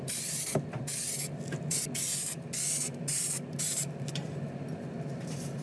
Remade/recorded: recorded